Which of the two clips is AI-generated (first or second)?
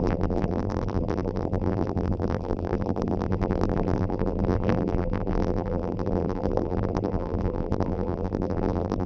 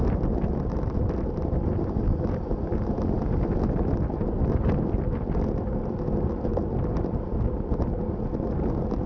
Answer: first